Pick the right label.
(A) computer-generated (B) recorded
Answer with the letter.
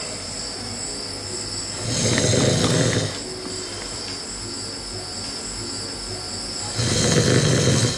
B